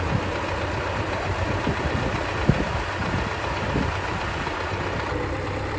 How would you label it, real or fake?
real